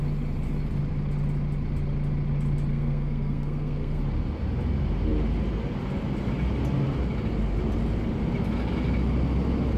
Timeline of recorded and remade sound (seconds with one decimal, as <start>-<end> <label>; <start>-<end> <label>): 0.0-2.7 recorded; 2.7-4.0 remade; 4.0-9.8 recorded